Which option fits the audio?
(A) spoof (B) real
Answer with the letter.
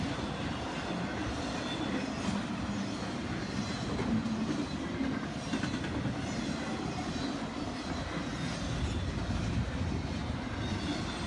B